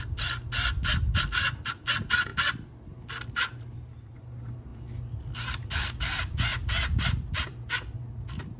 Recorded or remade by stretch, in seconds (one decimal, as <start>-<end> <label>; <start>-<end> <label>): 0.0-8.6 recorded